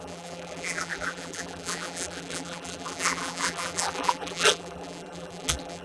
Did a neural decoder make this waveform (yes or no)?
yes